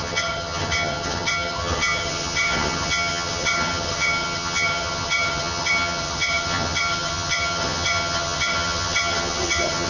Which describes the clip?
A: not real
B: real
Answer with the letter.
A